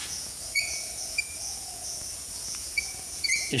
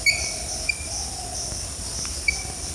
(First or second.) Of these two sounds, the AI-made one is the first